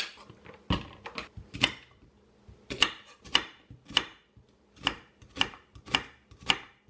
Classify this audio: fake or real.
real